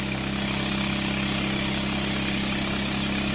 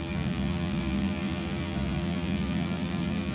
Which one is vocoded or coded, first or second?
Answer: second